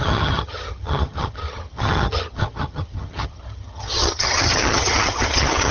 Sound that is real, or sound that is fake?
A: fake